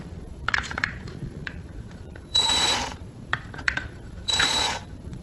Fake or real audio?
fake